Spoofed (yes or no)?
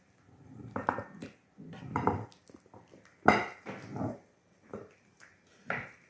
no